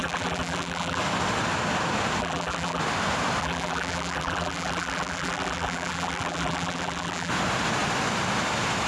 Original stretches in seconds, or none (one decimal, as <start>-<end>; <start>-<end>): 1.0-2.2; 2.8-3.4; 7.3-8.9